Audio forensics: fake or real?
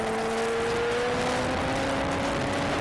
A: real